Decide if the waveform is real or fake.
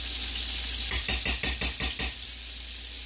real